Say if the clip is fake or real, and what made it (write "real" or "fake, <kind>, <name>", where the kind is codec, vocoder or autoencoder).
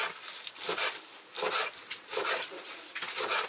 real